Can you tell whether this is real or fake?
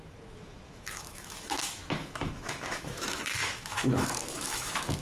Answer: fake